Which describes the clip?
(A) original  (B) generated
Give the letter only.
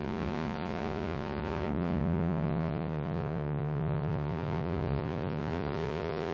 B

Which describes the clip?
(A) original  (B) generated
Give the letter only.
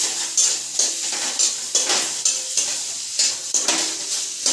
A